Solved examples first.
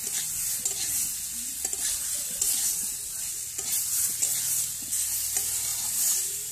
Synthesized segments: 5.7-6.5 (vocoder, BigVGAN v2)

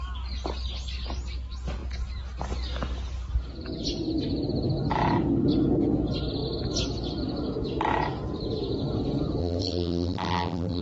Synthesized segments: 9.4-10.8 (vocoder, BigVGAN v2)

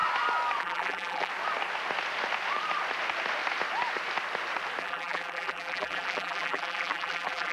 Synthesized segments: 0.6-1.3 (vocoder, BigVGAN v2); 4.8-7.5